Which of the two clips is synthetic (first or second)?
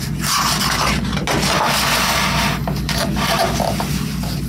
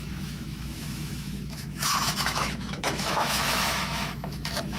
second